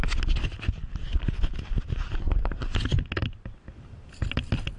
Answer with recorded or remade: recorded